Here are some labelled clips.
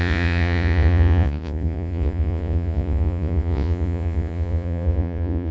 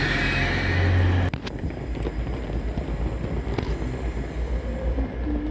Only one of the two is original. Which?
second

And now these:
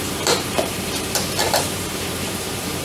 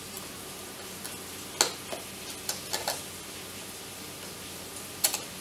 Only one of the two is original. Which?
second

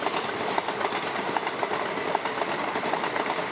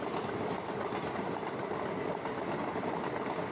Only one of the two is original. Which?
second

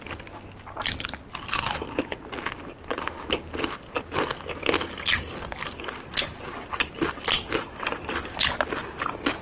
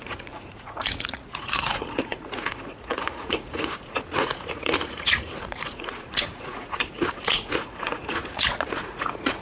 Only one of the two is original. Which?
first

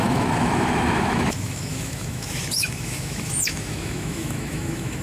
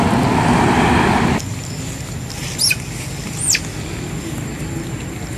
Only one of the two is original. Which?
second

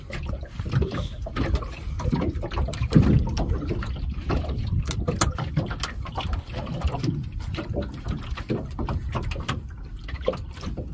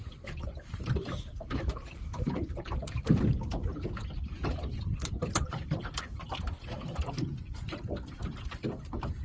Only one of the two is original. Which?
first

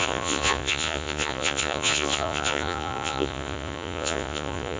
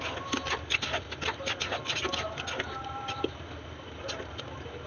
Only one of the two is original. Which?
second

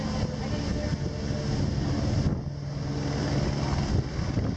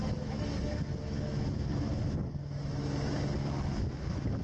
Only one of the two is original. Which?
first